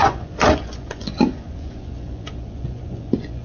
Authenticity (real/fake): fake